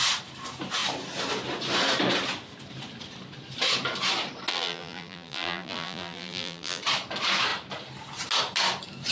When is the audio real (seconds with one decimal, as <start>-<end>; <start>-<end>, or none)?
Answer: 0.0-4.5; 6.8-9.1